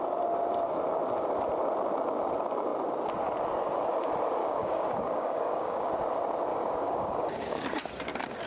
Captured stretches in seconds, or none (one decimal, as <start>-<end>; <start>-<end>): 0.0-4.4; 5.9-6.5; 7.7-8.5